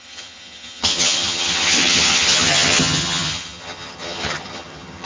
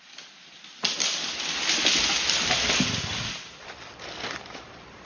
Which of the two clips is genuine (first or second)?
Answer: second